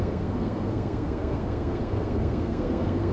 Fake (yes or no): yes